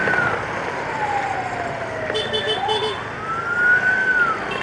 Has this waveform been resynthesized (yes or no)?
no